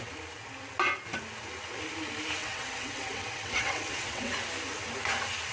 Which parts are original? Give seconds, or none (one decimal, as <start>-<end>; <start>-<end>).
0.0-2.4; 4.3-5.5